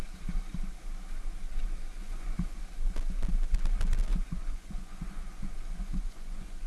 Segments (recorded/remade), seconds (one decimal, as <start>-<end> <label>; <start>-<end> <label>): 0.0-2.0 recorded; 2.0-2.6 remade; 2.6-4.1 recorded; 4.1-6.7 remade